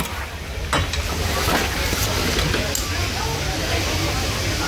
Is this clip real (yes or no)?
yes